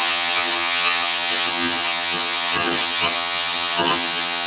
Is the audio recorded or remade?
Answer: remade